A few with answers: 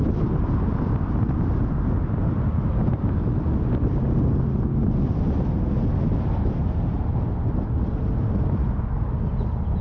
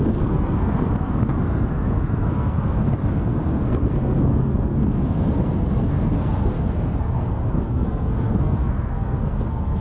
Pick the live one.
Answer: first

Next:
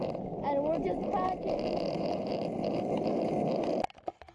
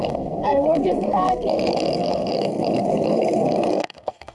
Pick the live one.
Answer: first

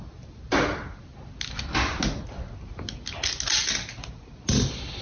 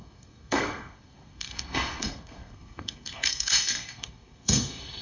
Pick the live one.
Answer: first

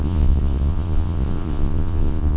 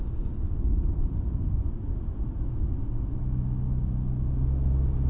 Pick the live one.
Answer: second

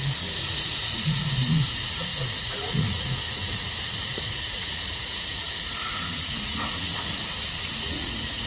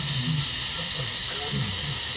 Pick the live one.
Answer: second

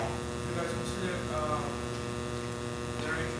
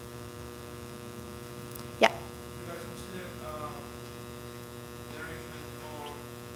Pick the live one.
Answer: first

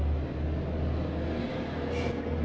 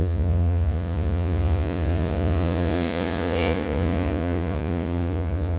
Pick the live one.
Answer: first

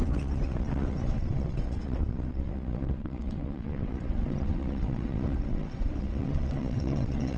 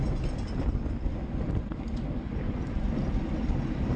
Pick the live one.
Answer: second